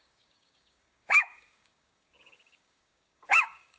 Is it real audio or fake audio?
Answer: fake